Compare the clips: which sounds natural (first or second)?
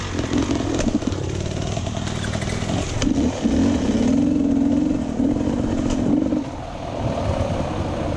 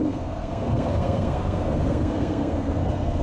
first